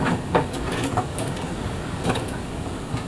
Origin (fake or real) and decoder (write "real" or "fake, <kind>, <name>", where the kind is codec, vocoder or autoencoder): fake, codec, DAC